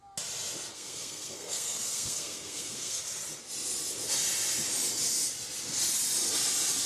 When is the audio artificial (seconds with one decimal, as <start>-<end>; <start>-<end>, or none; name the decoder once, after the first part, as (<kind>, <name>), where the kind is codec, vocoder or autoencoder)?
0.7-3.0 (codec, SNAC)